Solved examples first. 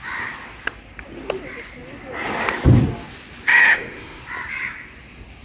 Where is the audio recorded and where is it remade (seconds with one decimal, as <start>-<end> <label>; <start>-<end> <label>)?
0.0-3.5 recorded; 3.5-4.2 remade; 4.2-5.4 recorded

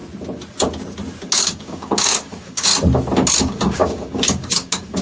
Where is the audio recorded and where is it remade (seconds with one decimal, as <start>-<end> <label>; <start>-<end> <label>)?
0.0-1.2 recorded; 1.2-2.7 remade; 2.7-3.4 recorded; 3.4-5.0 remade

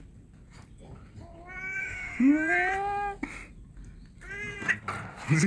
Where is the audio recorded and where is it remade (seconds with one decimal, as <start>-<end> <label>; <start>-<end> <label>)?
0.0-1.8 recorded; 1.8-2.3 remade; 2.3-5.5 recorded

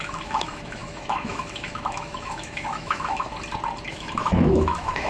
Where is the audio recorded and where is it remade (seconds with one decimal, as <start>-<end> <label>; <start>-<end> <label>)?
0.0-3.3 remade; 3.3-3.9 recorded; 3.9-5.1 remade

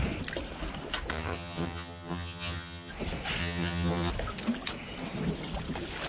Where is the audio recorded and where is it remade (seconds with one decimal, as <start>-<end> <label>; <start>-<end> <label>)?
0.0-1.1 recorded; 1.1-2.9 remade; 2.9-3.4 recorded; 3.4-4.1 remade; 4.1-6.1 recorded

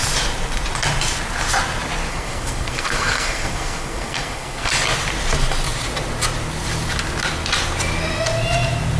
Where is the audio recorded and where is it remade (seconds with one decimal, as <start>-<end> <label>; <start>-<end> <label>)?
0.0-2.1 recorded; 2.1-4.7 remade; 4.7-9.0 recorded

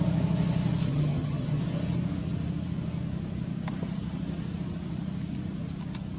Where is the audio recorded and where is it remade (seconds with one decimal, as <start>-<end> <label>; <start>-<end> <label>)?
0.0-0.9 recorded; 0.9-1.6 remade; 1.6-6.2 recorded

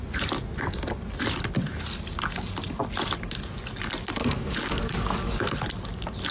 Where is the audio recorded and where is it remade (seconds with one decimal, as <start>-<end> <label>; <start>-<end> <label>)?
0.0-4.2 recorded; 4.2-5.4 remade; 5.4-6.3 recorded